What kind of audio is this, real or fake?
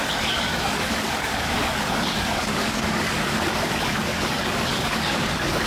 fake